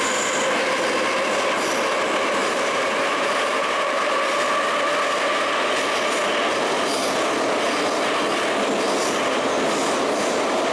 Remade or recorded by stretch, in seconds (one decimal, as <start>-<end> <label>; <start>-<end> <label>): 0.0-2.4 recorded; 2.4-4.2 remade; 4.2-10.7 recorded